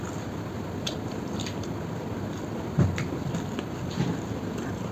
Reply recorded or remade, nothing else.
remade